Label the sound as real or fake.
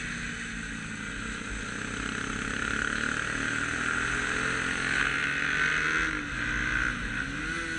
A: real